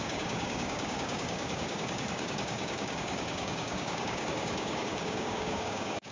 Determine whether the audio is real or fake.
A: fake